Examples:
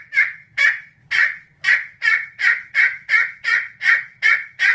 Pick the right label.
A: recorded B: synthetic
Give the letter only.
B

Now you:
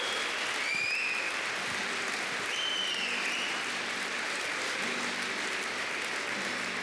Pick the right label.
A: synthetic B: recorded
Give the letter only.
B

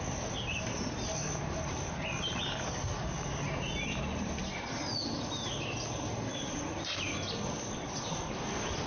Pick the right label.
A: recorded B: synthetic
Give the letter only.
A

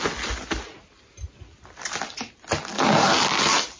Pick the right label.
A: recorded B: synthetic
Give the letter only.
A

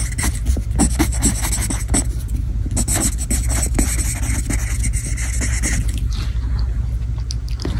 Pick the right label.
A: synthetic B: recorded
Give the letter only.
B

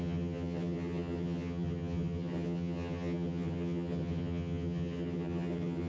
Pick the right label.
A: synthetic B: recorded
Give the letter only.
A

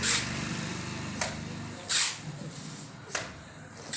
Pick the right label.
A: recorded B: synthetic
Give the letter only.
A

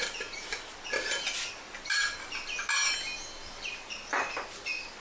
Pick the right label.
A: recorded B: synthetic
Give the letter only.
A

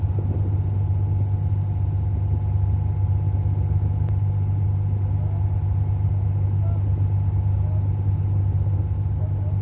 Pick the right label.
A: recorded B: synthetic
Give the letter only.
A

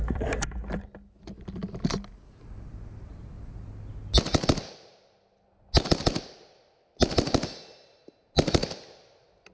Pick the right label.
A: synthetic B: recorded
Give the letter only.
B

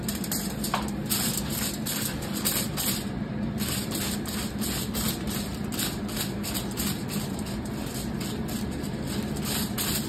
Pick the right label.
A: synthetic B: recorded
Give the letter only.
B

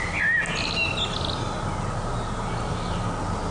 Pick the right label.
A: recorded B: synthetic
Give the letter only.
A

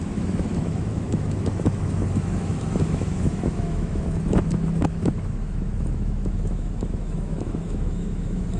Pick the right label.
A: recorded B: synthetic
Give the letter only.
B